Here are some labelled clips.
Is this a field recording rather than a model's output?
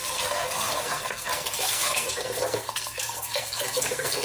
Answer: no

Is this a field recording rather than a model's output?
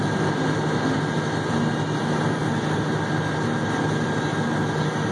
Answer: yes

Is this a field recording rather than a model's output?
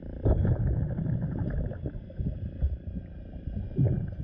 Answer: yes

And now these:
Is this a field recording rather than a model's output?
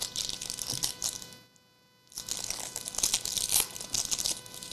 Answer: yes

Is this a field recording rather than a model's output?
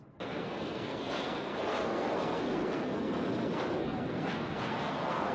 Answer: no